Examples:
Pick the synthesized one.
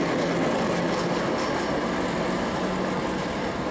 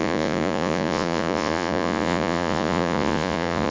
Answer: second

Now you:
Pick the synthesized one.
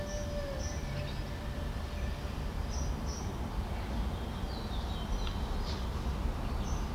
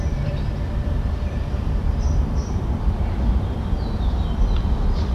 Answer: second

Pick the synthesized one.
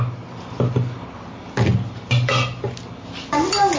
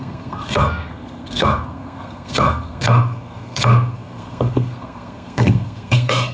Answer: second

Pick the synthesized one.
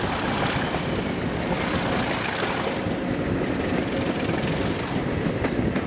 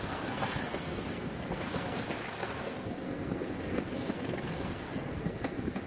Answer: second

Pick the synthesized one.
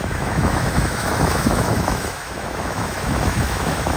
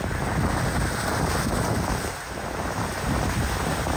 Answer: first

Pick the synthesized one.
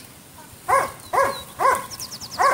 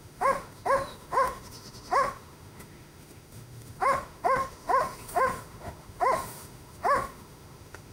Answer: second